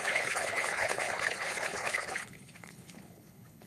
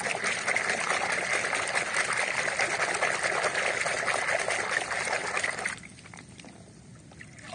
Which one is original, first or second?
second